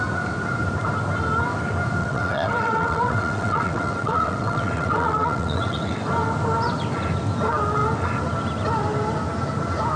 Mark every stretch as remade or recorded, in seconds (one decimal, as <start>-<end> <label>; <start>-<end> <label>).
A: 0.0-2.0 recorded; 2.0-6.0 remade; 6.0-10.0 recorded